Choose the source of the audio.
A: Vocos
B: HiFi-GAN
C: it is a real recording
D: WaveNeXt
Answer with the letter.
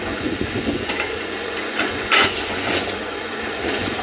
A